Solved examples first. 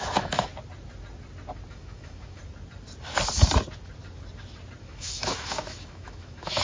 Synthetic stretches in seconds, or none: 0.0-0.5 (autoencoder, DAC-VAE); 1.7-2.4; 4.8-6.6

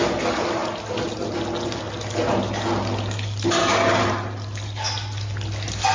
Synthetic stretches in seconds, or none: none

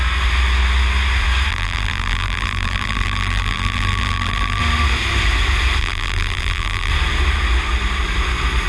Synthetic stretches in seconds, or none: 1.5-4.6 (vocoder, BigVGAN v2); 5.8-6.9

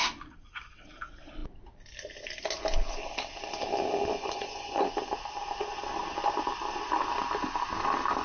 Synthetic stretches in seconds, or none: 4.1-4.9 (vocoder, Vocos)

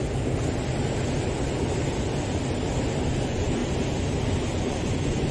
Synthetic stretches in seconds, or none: 3.2-3.6 (vocoder, Vocos); 4.6-5.3

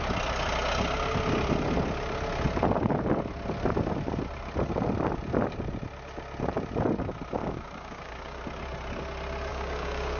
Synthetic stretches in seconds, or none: 7.4-8.4 (codec, DAC); 9.5-10.2

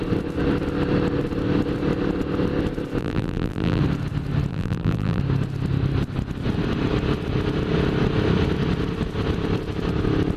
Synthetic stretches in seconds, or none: 3.0-3.8 (vocoder, BigVGAN v2); 4.5-5.2